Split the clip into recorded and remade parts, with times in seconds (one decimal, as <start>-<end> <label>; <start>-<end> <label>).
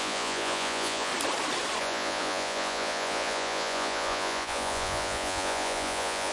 0.0-1.1 remade; 1.1-1.8 recorded; 1.8-6.3 remade